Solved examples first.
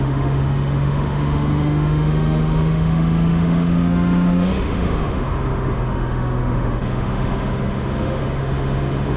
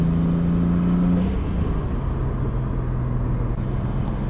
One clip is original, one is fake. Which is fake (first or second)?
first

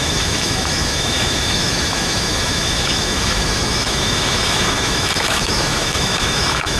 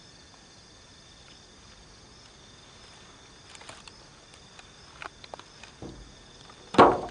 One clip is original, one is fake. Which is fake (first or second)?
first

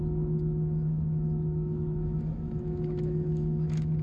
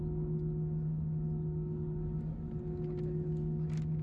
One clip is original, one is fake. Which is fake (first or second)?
first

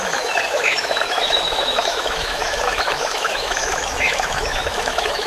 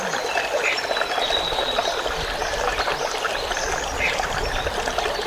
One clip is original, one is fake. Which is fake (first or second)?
first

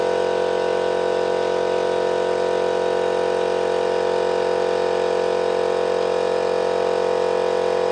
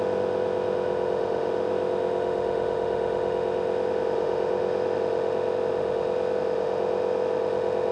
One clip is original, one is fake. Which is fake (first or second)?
second